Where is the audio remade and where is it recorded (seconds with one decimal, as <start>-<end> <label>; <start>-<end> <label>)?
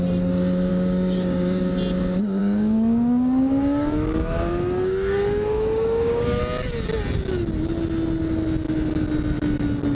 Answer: 0.0-0.7 recorded; 0.7-1.7 remade; 1.7-2.4 recorded; 2.4-6.4 remade; 6.4-9.9 recorded